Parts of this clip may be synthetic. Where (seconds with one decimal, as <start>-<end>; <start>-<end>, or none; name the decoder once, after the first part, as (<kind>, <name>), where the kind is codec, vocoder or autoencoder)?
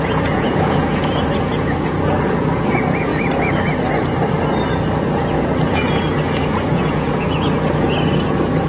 0.0-3.1 (vocoder, Vocos); 4.7-8.7